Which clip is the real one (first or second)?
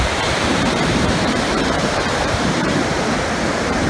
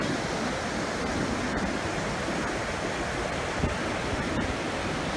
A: second